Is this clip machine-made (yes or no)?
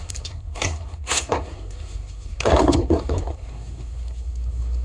yes